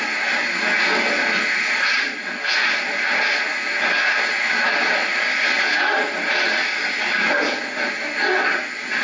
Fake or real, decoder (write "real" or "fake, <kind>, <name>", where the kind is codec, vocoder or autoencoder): real